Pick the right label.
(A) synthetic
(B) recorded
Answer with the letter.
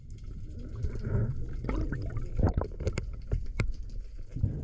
B